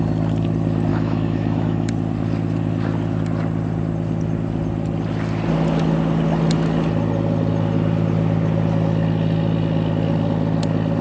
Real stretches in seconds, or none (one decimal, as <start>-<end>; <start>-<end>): 0.0-0.9; 1.9-11.0